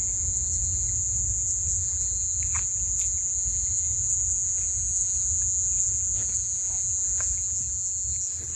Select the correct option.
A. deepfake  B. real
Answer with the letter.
B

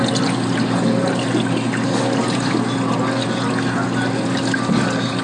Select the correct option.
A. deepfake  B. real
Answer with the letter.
B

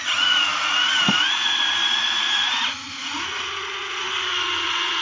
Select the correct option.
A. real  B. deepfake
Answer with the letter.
B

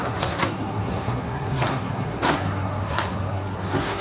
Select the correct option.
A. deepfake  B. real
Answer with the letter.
A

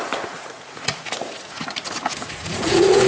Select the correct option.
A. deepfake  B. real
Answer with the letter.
A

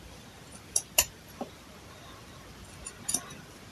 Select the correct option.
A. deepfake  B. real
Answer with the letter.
A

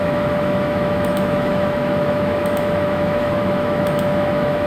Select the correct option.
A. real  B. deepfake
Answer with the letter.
B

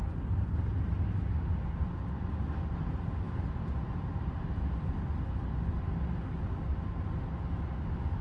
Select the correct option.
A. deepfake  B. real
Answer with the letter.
B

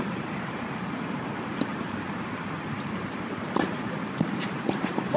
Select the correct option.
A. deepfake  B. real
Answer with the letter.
A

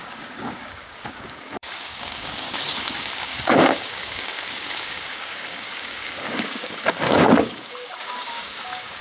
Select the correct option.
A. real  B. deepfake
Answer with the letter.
B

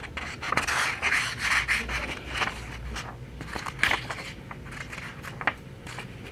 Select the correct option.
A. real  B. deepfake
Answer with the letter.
A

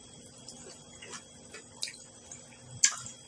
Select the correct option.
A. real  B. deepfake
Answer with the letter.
A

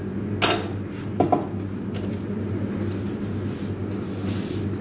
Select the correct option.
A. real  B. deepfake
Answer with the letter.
A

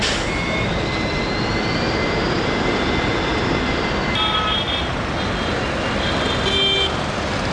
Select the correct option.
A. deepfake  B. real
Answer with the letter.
B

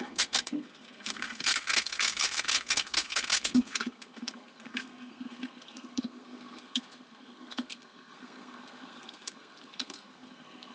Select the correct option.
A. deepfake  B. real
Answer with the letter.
A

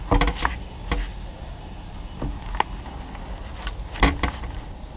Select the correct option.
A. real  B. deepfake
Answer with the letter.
A